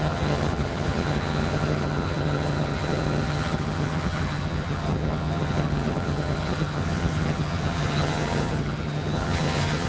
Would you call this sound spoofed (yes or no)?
yes